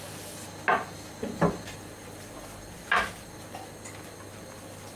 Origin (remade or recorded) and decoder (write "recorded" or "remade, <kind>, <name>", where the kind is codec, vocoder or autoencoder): recorded